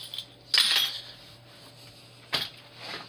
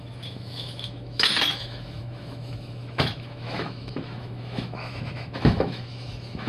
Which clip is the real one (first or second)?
first